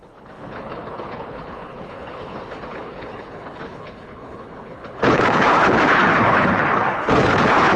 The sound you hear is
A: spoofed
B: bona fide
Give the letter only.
A